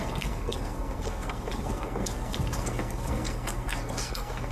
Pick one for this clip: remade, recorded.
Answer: remade